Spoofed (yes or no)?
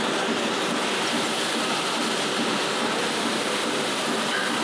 no